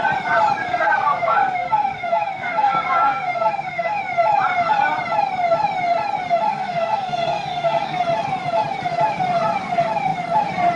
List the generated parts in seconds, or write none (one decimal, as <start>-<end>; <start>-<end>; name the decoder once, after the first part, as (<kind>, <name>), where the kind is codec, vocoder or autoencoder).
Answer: 0.7-4.0 (codec, SNAC); 6.5-8.0